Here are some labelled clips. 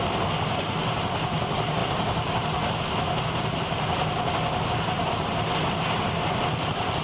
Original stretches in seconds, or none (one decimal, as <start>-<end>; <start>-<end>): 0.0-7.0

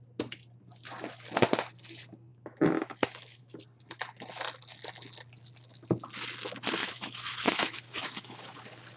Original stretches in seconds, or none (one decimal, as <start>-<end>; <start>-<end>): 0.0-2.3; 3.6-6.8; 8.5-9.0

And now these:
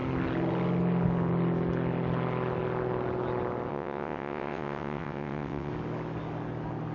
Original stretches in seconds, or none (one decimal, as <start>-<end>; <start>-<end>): 0.0-3.7; 5.7-6.9

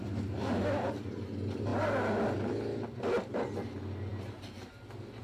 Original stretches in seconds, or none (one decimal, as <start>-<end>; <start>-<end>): 0.0-5.2